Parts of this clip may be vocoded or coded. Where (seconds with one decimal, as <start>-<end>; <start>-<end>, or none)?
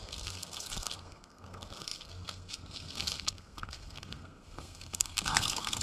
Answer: 0.0-5.8